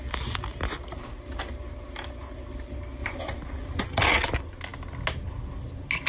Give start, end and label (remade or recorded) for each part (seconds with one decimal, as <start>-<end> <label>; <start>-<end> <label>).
0.0-0.5 recorded; 0.5-1.4 remade; 1.4-3.0 recorded; 3.0-3.8 remade; 3.8-6.1 recorded